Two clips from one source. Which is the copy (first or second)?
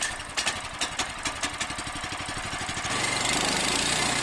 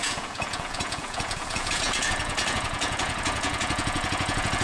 second